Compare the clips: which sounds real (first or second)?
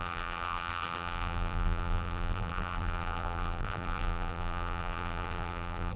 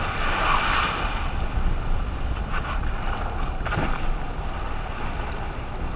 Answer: second